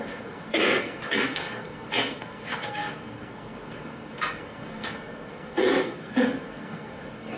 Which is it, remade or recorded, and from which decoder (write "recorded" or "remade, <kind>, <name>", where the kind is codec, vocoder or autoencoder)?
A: remade, codec, SNAC